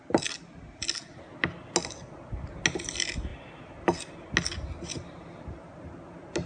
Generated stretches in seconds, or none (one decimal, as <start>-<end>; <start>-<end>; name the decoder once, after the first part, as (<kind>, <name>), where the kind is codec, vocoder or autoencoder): none